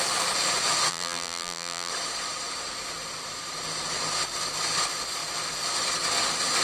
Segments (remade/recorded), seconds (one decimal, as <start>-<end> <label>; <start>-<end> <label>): 0.0-0.9 recorded; 0.9-1.9 remade; 1.9-6.6 recorded